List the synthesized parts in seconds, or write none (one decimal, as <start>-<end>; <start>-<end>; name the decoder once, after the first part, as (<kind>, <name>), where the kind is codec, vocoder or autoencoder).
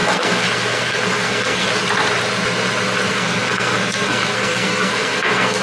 0.0-1.7 (codec, SNAC); 3.1-5.6